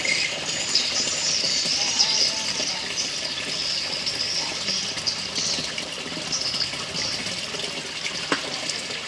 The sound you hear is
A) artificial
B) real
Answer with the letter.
B